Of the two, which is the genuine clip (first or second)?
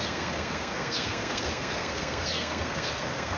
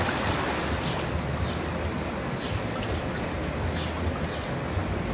second